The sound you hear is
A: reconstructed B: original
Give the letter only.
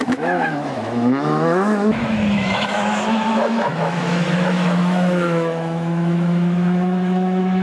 A